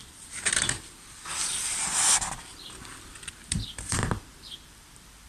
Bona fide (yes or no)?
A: no